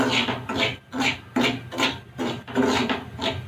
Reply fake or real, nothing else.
real